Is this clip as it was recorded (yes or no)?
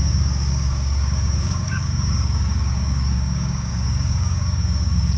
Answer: no